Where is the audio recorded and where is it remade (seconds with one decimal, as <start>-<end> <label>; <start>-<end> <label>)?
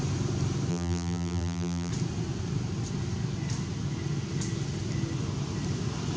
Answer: 0.0-0.7 recorded; 0.7-1.9 remade; 1.9-6.2 recorded